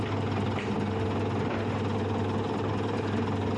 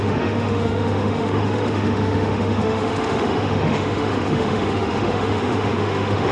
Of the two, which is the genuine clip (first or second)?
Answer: first